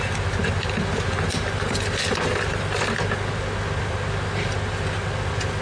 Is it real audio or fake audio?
real